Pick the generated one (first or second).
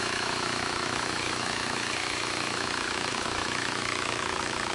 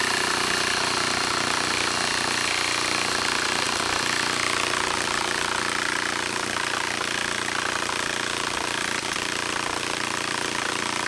first